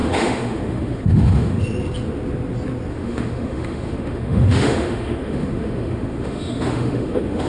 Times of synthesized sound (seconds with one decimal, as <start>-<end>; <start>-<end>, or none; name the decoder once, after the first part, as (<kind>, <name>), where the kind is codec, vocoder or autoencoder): 0.0-1.6 (autoencoder, DAC-VAE); 2.9-7.5